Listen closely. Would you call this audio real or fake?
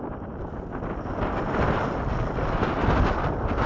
real